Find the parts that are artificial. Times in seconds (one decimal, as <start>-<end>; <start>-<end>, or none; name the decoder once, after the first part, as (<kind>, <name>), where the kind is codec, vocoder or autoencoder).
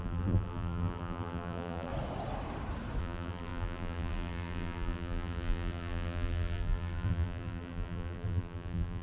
0.0-1.9 (vocoder, BigVGAN v2); 3.0-9.0